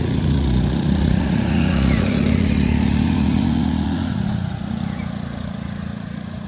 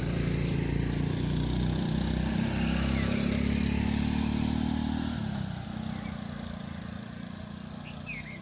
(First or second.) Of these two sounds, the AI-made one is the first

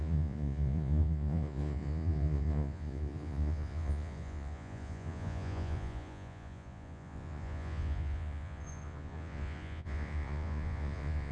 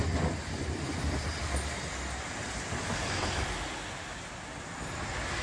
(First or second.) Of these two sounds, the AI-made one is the first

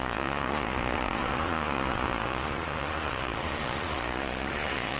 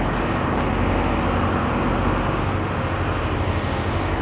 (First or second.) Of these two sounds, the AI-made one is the first